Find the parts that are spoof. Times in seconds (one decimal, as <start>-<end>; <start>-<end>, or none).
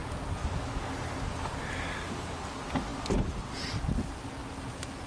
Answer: none